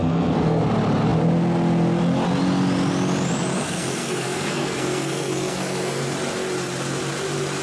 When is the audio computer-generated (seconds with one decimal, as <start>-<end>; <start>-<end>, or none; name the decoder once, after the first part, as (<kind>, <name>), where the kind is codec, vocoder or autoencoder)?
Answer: 0.0-0.6 (codec, SNAC); 3.5-6.0